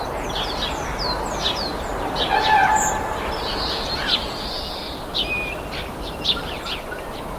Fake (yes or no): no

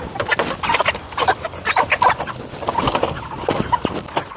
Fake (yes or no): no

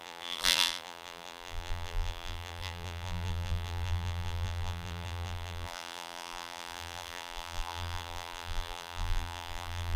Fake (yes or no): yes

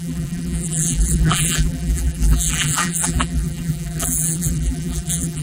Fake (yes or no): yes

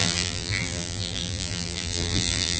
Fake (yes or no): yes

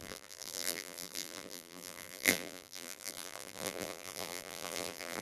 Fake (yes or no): yes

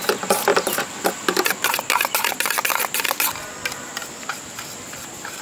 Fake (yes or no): no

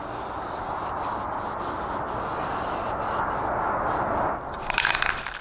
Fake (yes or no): no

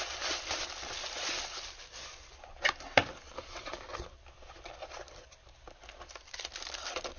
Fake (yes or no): yes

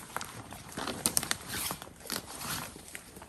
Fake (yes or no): yes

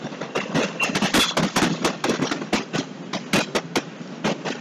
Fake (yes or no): no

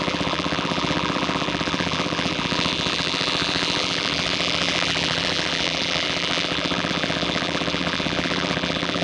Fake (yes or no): yes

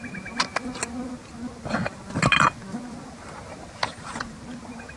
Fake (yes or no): no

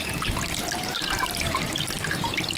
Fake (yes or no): yes